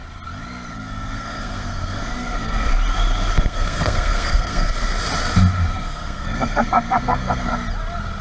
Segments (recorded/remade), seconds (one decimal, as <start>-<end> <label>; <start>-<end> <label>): 0.0-0.7 recorded; 0.7-2.7 remade; 2.7-3.3 recorded; 3.3-4.9 remade; 4.9-5.7 recorded; 5.7-7.5 remade; 7.5-8.2 recorded